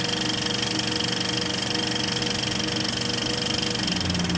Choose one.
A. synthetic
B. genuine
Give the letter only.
B